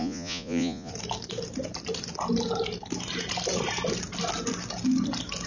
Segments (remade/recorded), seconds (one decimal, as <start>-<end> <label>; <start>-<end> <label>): 0.0-0.9 remade; 0.9-5.5 recorded